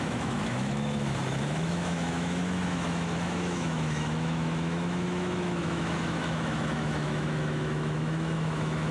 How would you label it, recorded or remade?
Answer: remade